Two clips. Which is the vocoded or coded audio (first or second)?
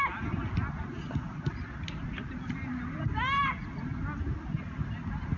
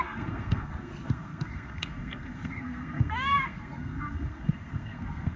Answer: second